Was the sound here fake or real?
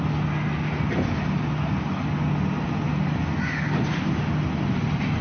real